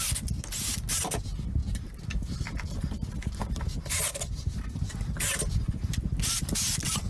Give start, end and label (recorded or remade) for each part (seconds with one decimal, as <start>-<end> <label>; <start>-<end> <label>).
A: 0.0-7.1 recorded